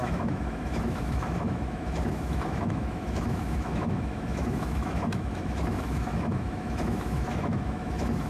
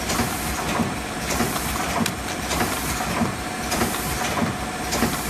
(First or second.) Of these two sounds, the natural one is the second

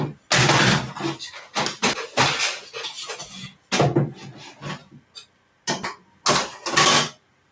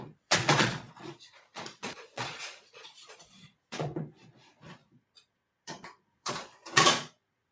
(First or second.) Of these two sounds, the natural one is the first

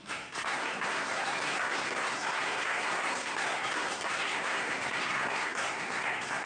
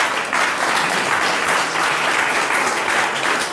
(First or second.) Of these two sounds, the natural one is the second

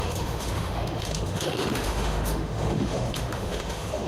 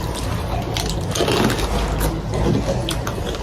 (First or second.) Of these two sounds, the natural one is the second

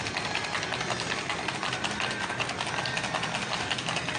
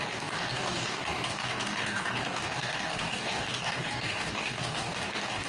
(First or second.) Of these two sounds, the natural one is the first